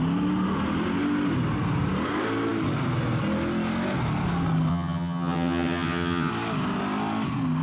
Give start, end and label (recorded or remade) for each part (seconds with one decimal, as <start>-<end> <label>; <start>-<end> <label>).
0.0-4.7 recorded; 4.7-6.3 remade; 6.3-7.6 recorded

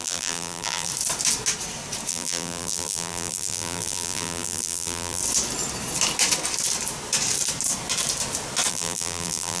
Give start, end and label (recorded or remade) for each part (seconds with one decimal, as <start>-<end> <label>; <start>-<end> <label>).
0.0-0.9 remade; 0.9-2.1 recorded; 2.1-5.2 remade; 5.2-8.7 recorded; 8.7-9.6 remade

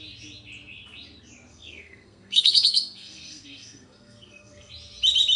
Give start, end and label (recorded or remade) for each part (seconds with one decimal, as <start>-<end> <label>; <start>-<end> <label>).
0.0-1.5 recorded; 1.5-4.7 remade; 4.7-5.4 recorded

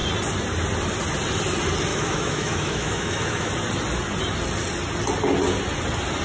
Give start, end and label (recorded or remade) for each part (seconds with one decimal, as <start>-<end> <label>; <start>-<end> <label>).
0.0-1.9 recorded; 1.9-3.5 remade; 3.5-6.2 recorded

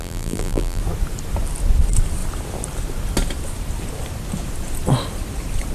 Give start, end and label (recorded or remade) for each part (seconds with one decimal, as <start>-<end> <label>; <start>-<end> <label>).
0.0-0.8 remade; 0.8-5.7 recorded

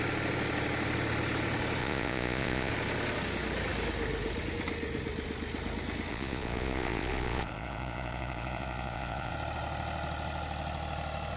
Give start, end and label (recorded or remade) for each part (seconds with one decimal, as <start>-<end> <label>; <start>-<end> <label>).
0.0-1.8 recorded; 1.8-2.7 remade; 2.7-6.1 recorded; 6.1-9.3 remade; 9.3-11.4 recorded

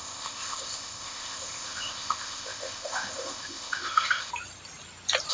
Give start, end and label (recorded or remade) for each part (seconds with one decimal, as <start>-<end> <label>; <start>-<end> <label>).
0.0-4.3 remade; 4.3-5.3 recorded

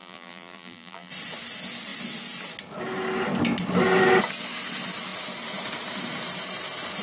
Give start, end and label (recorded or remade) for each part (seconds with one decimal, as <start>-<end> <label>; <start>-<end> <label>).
0.0-1.1 remade; 1.1-7.0 recorded